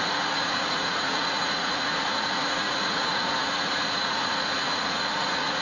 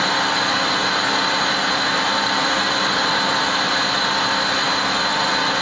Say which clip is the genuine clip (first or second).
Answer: second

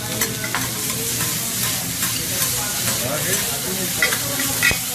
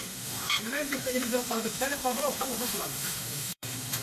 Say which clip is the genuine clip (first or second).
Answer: first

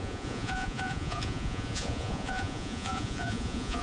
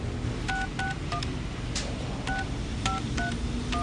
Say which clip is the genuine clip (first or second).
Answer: second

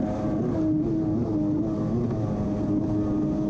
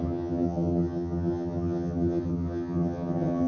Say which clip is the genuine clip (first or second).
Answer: first